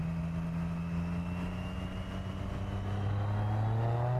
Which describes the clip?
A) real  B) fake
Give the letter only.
A